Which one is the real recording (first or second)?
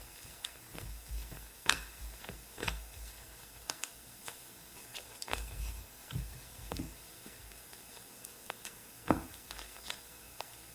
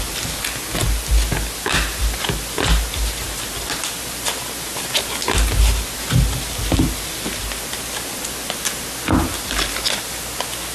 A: second